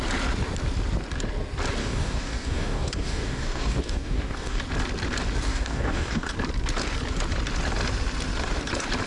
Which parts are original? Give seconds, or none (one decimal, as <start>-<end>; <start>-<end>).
0.0-1.8; 4.6-5.5; 6.3-9.1